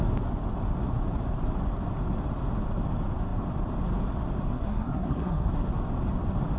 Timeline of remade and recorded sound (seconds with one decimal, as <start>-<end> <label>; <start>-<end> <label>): 0.0-4.5 recorded; 4.5-5.5 remade; 5.5-6.6 recorded

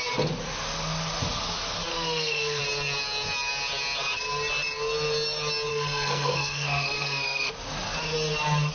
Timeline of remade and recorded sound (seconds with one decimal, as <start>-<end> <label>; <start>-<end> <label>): 0.0-1.9 recorded; 1.9-2.6 remade; 2.6-5.7 recorded; 5.7-7.5 remade; 7.5-8.7 recorded

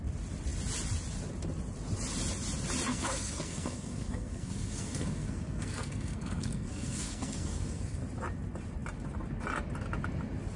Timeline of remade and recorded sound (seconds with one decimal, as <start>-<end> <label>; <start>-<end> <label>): 0.0-2.9 recorded; 2.9-8.0 remade; 8.0-10.6 recorded

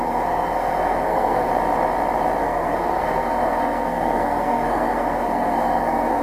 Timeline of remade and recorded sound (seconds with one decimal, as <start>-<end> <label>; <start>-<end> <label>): 0.0-1.5 remade; 1.5-2.4 recorded; 2.4-6.2 remade

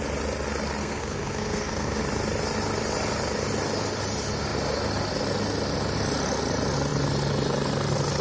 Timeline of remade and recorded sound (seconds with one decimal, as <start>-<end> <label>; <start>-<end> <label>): 0.0-0.8 recorded; 0.8-2.0 remade; 2.0-8.2 recorded